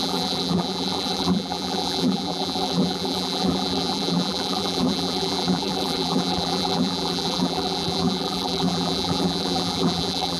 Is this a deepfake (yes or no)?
yes